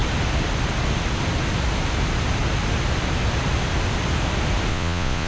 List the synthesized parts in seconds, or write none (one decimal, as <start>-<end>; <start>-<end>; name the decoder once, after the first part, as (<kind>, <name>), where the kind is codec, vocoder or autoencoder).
4.7-5.3 (vocoder, Vocos)